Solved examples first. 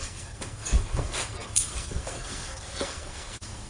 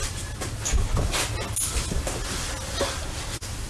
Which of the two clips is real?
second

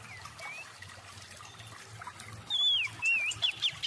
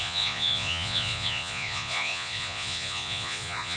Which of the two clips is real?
first